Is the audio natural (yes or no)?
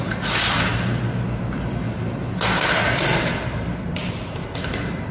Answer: yes